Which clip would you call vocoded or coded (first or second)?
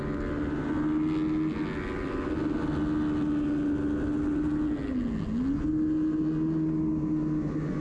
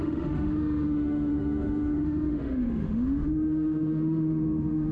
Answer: second